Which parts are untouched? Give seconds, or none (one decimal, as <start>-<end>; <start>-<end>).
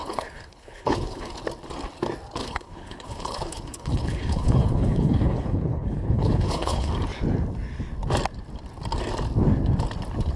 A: 1.3-2.4; 6.9-10.4